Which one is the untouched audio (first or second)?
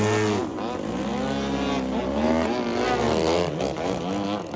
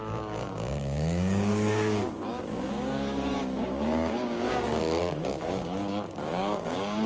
first